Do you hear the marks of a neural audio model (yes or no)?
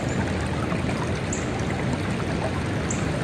no